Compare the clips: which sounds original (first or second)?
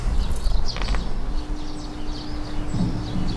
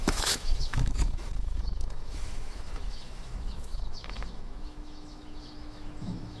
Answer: first